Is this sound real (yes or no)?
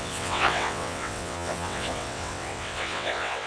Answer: no